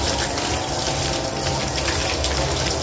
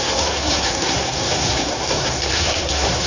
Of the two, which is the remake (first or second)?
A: second